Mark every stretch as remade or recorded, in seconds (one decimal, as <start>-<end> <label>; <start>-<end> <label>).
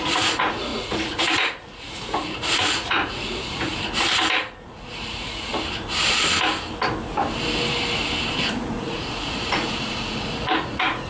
0.0-3.7 remade; 3.7-4.6 recorded; 4.6-5.5 remade; 5.5-8.5 recorded; 8.5-11.1 remade